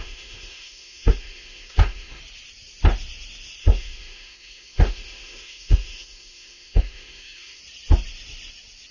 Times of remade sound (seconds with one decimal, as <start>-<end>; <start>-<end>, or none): 0.0-2.2; 3.6-7.6